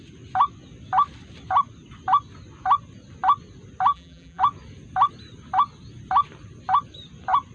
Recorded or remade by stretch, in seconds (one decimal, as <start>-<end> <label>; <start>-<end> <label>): 0.0-3.9 recorded; 3.9-4.4 remade; 4.4-7.5 recorded